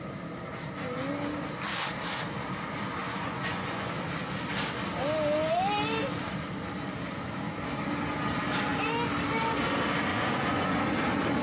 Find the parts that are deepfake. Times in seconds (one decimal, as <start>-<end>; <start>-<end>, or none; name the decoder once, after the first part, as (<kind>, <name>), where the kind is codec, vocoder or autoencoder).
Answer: 3.0-3.9 (vocoder, Vocos); 10.1-10.8